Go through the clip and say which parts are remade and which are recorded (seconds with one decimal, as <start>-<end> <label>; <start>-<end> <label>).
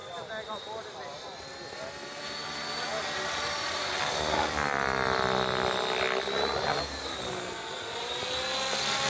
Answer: 0.0-9.1 recorded